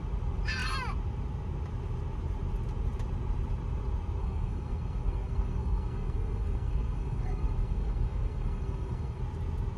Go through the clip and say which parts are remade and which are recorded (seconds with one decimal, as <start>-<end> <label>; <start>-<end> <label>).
0.0-4.2 recorded; 4.2-9.2 remade; 9.2-9.8 recorded